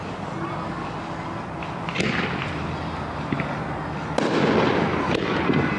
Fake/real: real